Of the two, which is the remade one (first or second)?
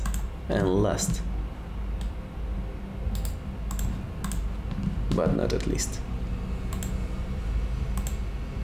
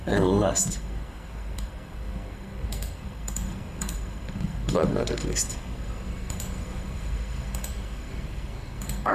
second